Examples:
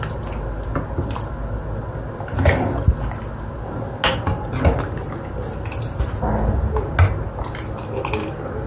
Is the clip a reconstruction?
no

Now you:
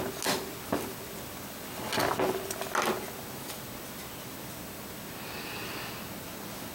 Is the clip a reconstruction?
no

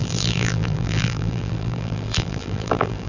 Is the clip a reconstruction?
yes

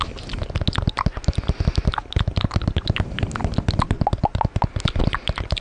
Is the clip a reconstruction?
no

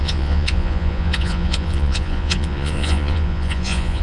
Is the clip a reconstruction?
yes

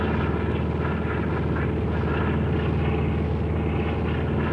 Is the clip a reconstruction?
no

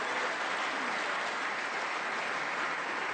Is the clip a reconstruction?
no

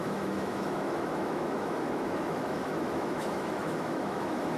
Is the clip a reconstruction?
yes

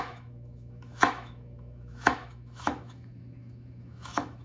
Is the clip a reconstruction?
yes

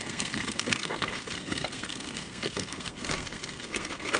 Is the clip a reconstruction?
yes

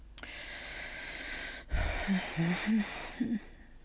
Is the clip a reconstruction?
no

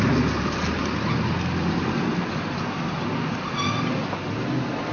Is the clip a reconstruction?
no